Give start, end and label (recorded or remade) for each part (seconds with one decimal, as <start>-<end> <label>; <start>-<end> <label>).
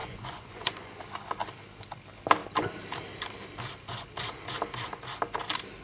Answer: 0.0-1.0 remade; 1.0-5.8 recorded